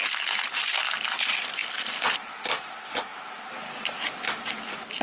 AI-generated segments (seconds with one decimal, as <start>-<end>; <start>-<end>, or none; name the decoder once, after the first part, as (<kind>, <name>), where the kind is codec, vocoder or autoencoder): none